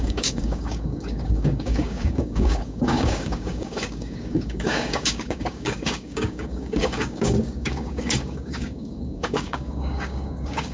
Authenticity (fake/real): fake